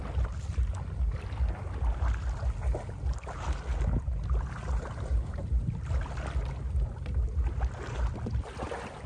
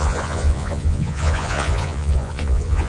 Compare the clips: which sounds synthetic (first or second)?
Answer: second